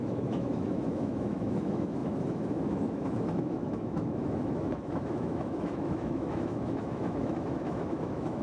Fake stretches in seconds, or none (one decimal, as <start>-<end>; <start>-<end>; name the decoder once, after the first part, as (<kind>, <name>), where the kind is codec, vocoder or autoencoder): 0.0-8.4 (autoencoder, DAC-VAE)